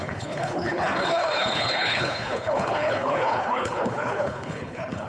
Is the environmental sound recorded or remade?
remade